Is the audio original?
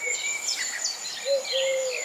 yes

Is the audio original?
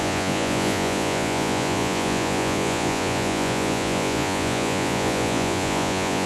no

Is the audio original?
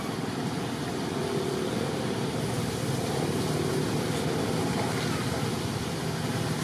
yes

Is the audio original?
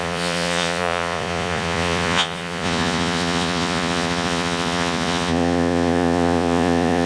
no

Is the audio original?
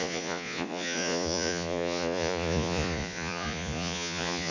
no